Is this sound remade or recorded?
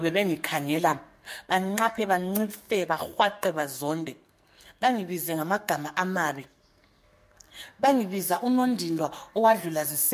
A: remade